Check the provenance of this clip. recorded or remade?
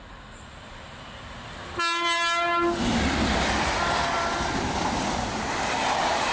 recorded